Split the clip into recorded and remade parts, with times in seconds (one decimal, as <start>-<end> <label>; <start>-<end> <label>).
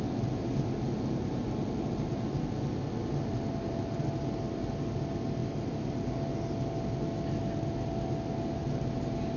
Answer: 0.0-9.4 recorded